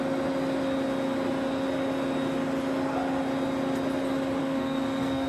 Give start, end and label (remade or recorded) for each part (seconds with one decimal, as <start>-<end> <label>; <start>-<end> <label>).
0.0-4.4 recorded; 4.4-5.3 remade